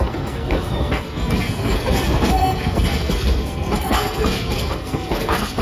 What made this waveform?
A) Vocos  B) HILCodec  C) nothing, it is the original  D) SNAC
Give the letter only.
D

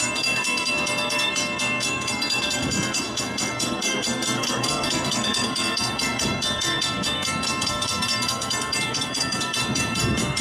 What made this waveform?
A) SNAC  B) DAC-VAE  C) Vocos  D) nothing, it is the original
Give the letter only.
A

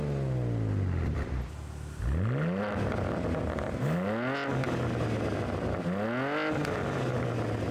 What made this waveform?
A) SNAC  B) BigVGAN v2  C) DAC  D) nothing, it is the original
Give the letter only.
D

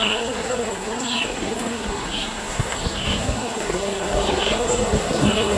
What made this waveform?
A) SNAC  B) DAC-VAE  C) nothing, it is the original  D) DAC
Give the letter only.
A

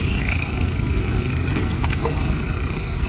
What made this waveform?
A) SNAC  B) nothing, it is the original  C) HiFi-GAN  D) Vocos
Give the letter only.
A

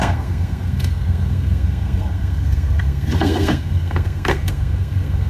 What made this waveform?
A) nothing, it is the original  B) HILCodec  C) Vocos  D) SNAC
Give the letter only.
D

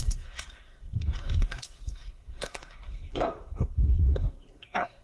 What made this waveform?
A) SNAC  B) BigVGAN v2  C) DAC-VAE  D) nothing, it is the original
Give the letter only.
A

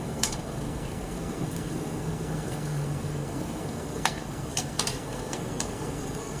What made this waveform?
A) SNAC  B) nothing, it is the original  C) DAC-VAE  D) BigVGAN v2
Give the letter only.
A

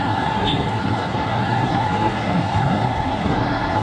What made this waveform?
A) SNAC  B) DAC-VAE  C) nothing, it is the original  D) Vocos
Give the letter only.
A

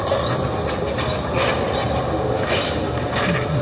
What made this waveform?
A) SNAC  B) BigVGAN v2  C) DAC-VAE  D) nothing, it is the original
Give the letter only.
D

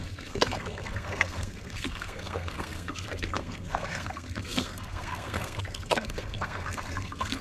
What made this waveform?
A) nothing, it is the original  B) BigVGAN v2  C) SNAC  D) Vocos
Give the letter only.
C